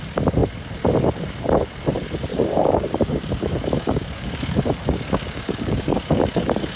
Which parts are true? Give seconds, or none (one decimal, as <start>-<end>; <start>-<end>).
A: 0.0-2.3